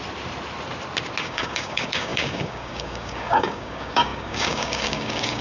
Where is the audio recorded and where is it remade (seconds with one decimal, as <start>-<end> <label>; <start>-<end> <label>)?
0.0-1.2 recorded; 1.2-5.4 remade